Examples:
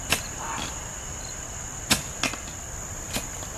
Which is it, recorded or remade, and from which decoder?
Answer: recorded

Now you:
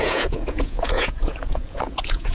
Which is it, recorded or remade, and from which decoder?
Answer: remade, vocoder, Vocos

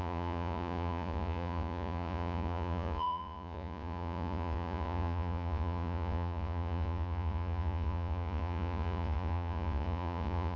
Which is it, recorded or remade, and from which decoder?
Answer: remade, vocoder, Vocos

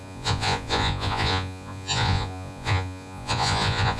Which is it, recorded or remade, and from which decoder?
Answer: remade, vocoder, Vocos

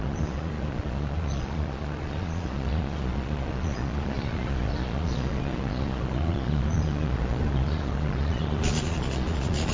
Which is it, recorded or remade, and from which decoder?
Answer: remade, vocoder, Vocos